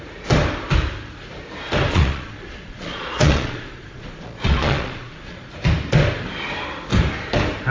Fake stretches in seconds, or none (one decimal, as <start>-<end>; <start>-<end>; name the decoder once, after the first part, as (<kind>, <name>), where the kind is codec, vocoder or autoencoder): 1.9-5.5 (vocoder, Vocos)